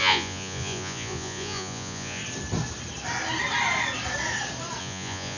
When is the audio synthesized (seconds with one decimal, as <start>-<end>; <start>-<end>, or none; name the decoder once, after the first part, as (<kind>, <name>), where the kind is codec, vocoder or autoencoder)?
0.0-2.2 (vocoder, Vocos); 4.8-5.4